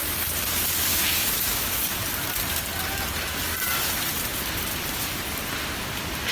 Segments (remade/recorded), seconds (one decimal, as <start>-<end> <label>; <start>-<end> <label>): 0.0-0.9 recorded; 0.9-1.8 remade; 1.8-6.3 recorded